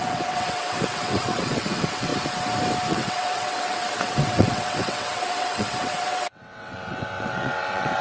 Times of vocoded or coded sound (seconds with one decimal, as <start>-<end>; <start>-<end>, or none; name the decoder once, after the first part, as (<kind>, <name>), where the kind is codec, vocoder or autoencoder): 0.0-2.1 (vocoder, WaveNeXt); 2.9-8.0